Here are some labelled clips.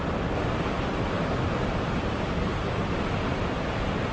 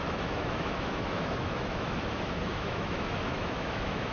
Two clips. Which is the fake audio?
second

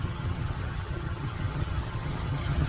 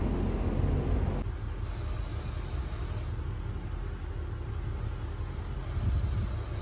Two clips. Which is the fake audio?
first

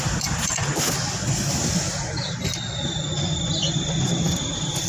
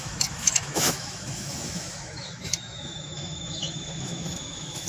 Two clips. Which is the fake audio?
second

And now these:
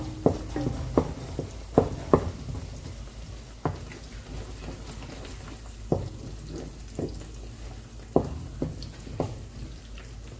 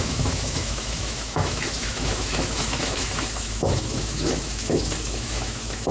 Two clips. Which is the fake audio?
second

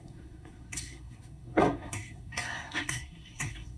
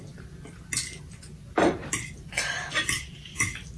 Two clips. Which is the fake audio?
first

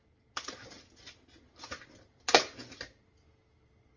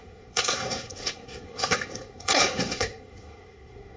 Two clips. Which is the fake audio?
second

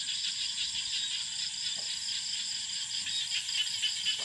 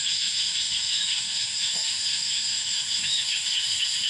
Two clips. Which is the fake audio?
second